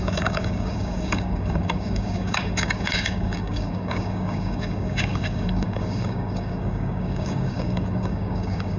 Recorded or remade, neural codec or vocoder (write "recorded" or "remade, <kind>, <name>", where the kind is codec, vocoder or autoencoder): remade, codec, DAC